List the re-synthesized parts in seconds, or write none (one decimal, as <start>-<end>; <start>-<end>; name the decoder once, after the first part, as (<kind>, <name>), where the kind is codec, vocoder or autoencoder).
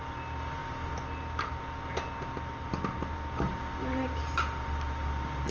none